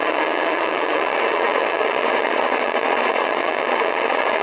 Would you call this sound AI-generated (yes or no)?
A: yes